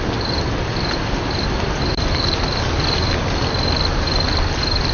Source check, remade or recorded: recorded